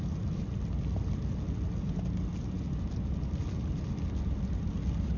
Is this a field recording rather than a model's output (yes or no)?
yes